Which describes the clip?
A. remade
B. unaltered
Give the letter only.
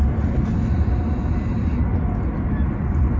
B